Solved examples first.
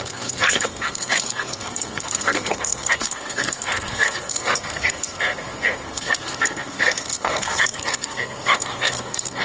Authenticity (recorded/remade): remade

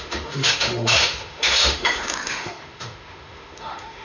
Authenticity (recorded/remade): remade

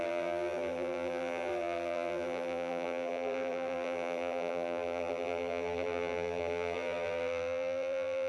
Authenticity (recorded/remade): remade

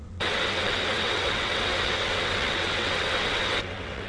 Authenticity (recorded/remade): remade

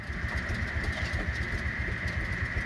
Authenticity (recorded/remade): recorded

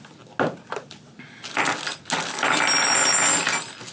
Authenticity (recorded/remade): recorded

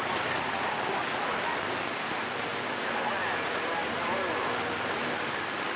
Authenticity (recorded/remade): recorded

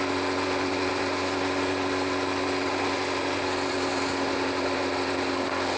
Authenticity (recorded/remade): recorded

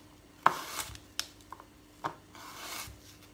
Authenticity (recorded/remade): recorded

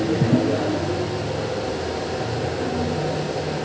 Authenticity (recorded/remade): recorded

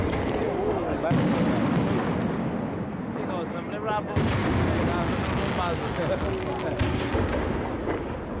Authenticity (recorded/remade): recorded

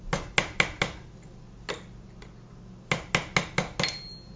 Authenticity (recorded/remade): recorded